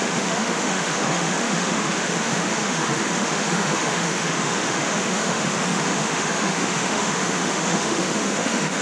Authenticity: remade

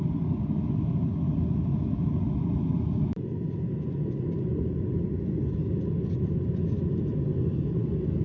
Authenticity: recorded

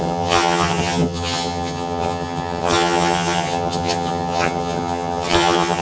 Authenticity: remade